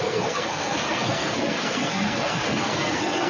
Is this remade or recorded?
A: remade